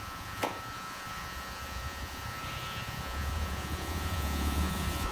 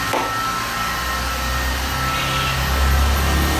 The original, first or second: second